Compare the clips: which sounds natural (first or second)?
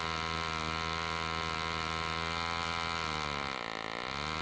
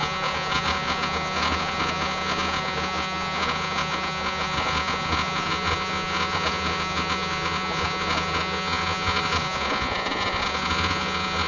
first